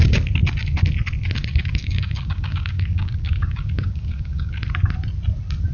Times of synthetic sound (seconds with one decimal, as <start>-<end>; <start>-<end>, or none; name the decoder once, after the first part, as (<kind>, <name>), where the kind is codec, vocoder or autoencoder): 1.5-4.6 (codec, DAC)